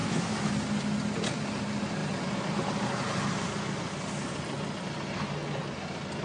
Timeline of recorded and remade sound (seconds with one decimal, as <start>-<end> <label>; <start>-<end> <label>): 0.0-0.5 remade; 0.5-6.2 recorded